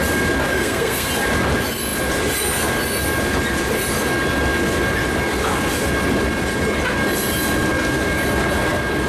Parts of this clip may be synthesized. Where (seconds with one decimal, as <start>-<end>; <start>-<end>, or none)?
0.5-1.1